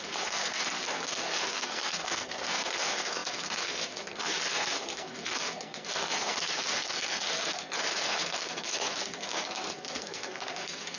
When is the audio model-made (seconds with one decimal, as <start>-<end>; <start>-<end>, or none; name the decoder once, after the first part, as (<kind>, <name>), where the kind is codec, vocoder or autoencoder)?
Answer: 0.0-11.0 (codec, SNAC)